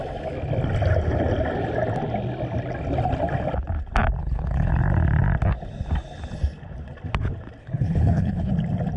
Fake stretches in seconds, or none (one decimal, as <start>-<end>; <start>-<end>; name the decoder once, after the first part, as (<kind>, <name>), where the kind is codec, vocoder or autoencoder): 4.2-4.7 (codec, HILCodec); 7.6-8.5